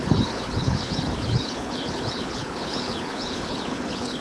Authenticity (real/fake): fake